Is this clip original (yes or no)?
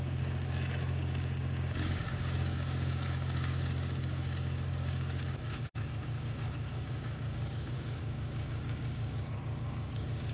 no